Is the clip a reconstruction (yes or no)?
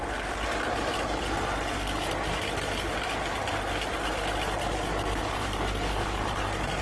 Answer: no